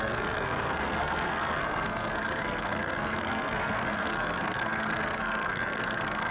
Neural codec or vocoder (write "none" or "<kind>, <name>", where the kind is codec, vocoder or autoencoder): codec, SNAC